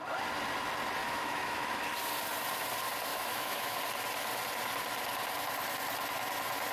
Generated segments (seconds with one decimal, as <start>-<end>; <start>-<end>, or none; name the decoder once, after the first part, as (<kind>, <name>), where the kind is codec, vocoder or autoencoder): 1.0-1.8 (autoencoder, DAC-VAE); 3.1-3.8